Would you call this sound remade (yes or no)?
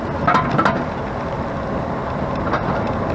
no